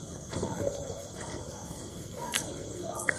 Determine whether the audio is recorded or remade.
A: remade